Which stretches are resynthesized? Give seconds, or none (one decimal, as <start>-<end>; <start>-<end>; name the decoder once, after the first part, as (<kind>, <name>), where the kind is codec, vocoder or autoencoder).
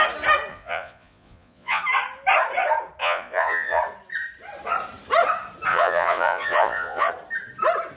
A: 0.5-1.8 (vocoder, Vocos); 3.0-3.8; 5.7-7.1